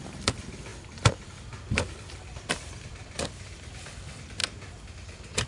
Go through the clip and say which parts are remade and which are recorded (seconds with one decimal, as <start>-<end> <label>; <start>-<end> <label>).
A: 0.0-4.4 remade; 4.4-5.5 recorded